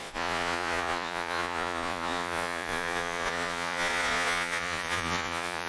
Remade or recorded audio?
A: remade